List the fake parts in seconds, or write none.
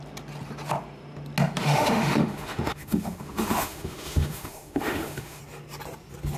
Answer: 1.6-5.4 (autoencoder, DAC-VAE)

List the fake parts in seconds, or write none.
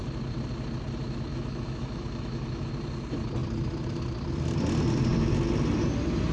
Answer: 1.3-2.7 (autoencoder, DAC-VAE)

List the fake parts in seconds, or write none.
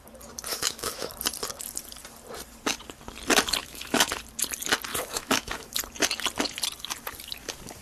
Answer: 0.5-1.1 (autoencoder, DAC-VAE); 3.6-4.1; 4.9-5.8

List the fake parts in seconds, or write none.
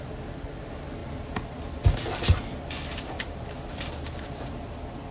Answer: none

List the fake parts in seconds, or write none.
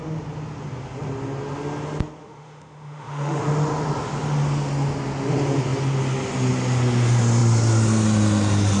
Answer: 2.2-3.4 (autoencoder, DAC-VAE)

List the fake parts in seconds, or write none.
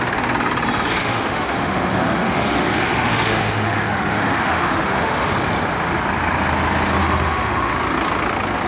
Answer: 1.0-5.3 (autoencoder, DAC-VAE); 7.0-7.7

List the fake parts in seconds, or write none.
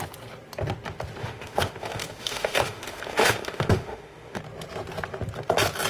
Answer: 1.2-4.4 (autoencoder, DAC-VAE)